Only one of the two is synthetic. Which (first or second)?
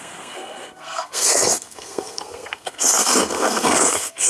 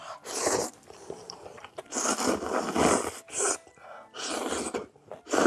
first